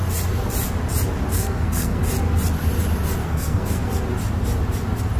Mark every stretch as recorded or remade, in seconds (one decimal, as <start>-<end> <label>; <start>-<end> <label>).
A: 0.0-1.3 recorded; 1.3-2.0 remade; 2.0-3.2 recorded; 3.2-3.9 remade; 3.9-5.2 recorded